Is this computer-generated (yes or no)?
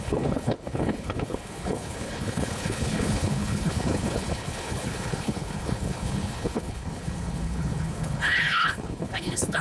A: yes